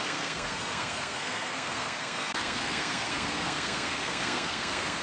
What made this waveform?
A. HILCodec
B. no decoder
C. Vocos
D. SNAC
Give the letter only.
D